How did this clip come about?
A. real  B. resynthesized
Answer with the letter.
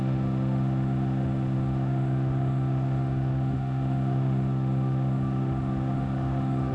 B